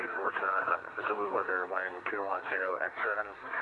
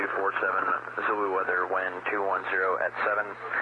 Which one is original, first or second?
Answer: second